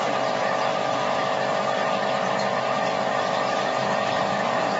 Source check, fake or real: real